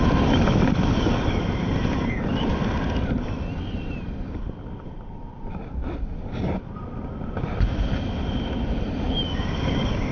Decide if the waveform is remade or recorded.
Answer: recorded